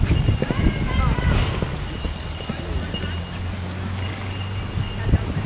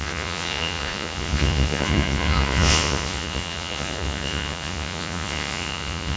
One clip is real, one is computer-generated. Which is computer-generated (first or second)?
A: second